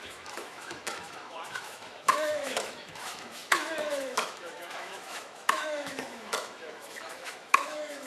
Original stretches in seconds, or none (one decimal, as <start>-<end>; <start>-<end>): none